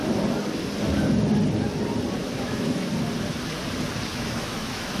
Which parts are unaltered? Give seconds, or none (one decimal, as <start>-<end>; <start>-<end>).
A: 0.0-2.2; 2.9-4.1